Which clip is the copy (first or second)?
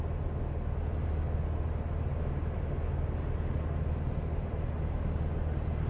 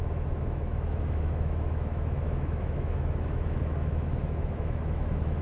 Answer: second